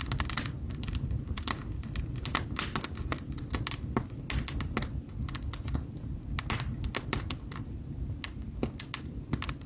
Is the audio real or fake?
real